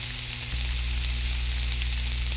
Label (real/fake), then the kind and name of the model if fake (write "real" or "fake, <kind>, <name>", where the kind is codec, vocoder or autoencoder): real